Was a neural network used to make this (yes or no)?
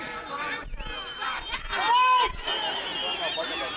no